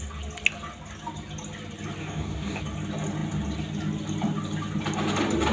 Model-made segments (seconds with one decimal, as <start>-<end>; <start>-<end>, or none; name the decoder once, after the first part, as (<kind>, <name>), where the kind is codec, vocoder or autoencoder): 2.0-2.6 (codec, DAC)